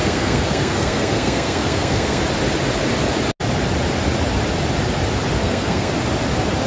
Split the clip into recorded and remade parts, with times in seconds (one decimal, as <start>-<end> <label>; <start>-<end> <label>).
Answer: 0.0-2.2 remade; 2.2-5.4 recorded; 5.4-5.9 remade; 5.9-6.7 recorded